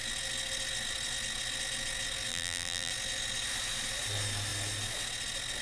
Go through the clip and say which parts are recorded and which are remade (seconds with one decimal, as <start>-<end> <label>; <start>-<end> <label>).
0.0-2.3 recorded; 2.3-2.9 remade; 2.9-5.6 recorded